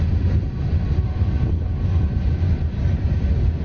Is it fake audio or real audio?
fake